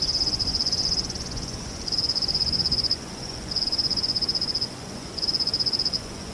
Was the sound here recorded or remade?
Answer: remade